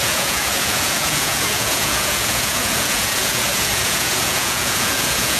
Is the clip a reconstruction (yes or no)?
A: yes